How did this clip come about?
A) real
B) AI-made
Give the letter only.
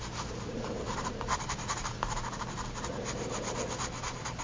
B